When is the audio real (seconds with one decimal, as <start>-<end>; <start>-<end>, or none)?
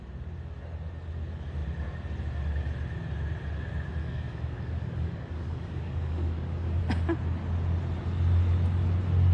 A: 0.0-4.0; 6.8-9.3